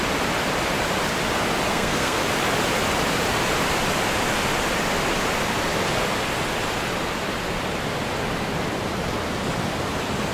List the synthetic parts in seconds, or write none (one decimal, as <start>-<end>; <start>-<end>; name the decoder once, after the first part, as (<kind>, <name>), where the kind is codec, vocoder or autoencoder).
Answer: 1.7-2.2 (codec, SNAC)